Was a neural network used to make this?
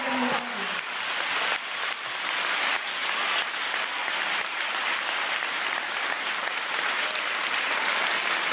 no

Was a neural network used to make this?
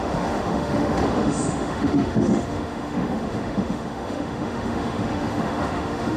yes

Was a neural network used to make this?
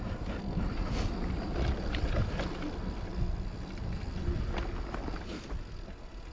no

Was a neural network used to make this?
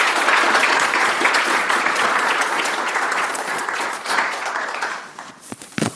yes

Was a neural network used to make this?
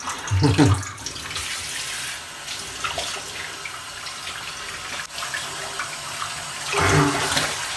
no